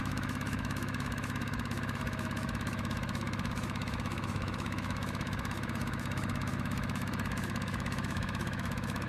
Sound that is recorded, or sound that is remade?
remade